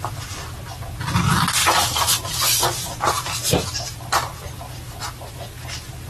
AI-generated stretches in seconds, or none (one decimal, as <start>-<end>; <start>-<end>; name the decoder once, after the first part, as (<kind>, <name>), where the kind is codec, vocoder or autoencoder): 1.6-5.3 (vocoder, BigVGAN v2)